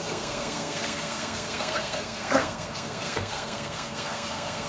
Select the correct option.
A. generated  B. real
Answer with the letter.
A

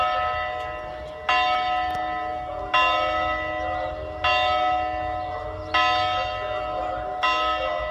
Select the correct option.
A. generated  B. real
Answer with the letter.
B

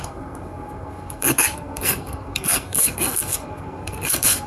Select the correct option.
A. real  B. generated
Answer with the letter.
B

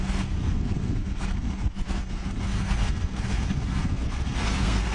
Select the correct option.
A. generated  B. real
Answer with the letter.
A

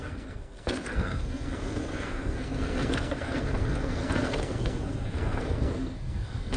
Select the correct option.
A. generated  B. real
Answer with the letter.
A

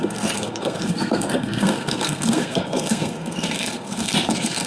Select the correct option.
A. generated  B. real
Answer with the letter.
A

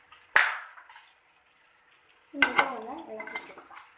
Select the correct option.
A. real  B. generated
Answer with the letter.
A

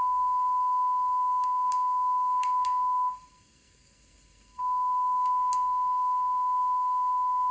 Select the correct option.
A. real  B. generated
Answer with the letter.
B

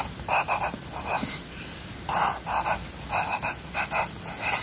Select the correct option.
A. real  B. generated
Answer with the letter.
A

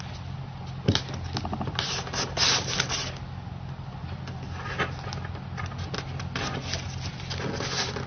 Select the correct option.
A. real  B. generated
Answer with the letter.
A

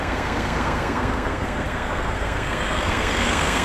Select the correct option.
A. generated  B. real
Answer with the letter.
A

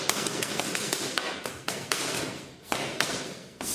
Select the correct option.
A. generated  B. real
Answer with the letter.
A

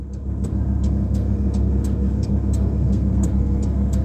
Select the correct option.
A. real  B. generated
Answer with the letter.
B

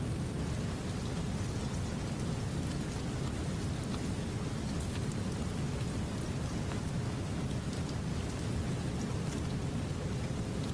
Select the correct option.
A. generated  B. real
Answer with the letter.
B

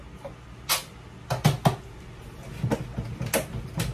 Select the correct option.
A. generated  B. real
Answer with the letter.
B